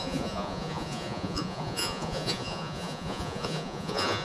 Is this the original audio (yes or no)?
no